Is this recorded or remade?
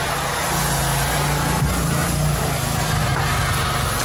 recorded